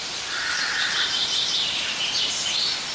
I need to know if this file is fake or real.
fake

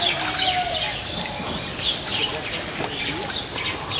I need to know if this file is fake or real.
real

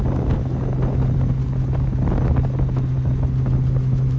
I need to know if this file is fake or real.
real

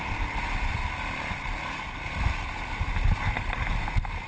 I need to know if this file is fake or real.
real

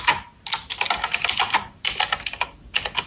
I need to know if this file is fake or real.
real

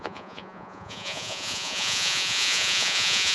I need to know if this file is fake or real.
fake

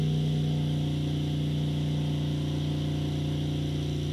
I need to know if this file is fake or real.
real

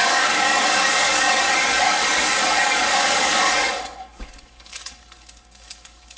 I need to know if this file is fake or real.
fake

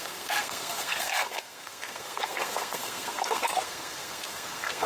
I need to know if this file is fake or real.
fake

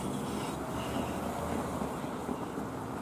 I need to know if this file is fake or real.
real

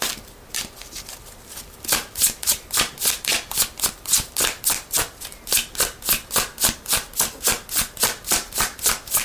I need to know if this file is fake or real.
real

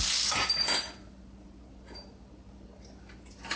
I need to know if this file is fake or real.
real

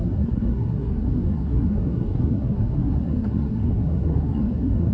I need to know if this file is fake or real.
fake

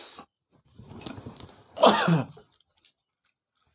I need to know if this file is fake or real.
real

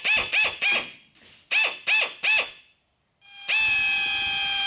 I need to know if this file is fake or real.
real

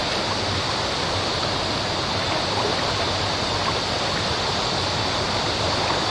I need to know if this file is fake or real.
real